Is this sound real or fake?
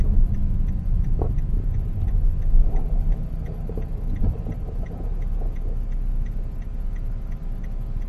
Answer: real